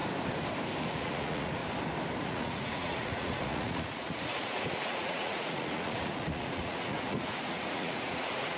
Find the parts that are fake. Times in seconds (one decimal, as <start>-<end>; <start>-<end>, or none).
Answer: 0.8-1.6; 2.2-8.6